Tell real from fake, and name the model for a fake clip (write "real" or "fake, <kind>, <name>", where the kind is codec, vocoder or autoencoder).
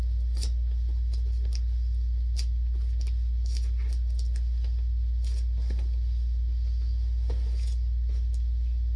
real